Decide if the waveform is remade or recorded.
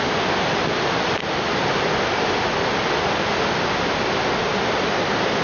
recorded